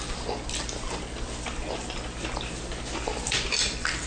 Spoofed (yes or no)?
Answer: no